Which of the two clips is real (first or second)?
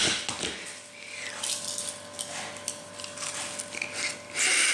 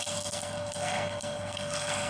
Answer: first